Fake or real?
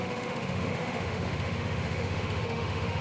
fake